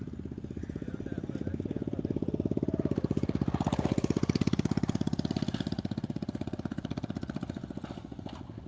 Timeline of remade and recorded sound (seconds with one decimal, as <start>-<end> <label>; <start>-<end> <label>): 0.0-1.5 recorded; 1.5-5.7 remade; 5.7-8.7 recorded